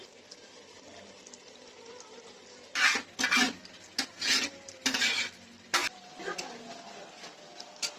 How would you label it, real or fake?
real